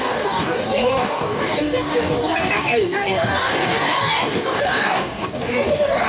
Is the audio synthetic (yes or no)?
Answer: yes